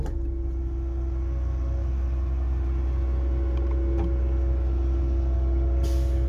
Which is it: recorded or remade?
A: recorded